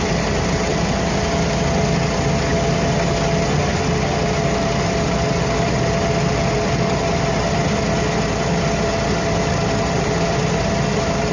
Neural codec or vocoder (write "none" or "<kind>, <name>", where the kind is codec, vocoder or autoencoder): none